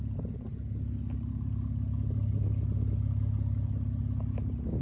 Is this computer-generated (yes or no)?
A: no